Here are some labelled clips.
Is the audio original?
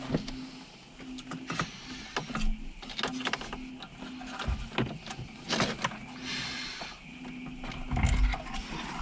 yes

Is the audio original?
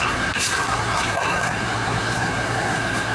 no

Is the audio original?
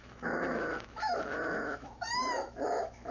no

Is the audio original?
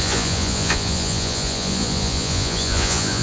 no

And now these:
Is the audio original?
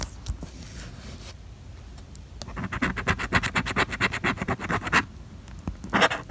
yes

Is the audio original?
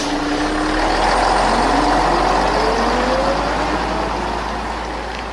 yes